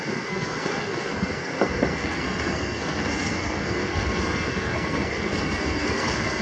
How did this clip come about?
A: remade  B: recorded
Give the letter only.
A